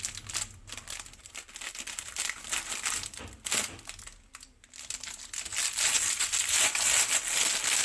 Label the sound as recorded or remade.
recorded